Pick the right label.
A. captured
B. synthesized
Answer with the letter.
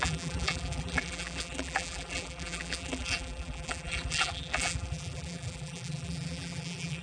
B